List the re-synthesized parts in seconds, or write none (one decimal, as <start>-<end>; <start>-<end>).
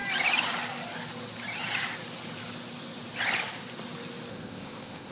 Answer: 4.3-5.1